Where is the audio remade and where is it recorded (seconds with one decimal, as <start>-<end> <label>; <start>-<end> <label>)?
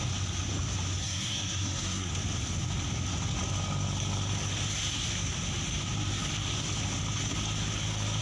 0.0-1.0 recorded; 1.0-2.1 remade; 2.1-8.2 recorded